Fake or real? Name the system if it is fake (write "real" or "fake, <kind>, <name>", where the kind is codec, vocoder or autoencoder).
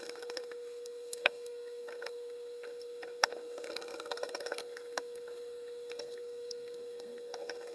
fake, codec, SNAC